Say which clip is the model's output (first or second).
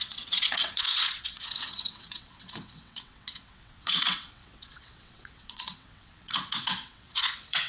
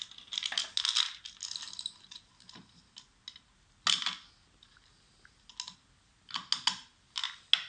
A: first